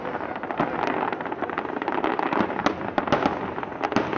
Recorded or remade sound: recorded